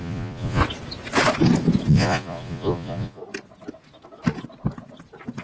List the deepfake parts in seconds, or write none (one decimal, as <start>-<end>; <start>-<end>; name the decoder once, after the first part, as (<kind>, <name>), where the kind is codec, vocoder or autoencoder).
0.0-0.6 (vocoder, Vocos); 1.9-3.2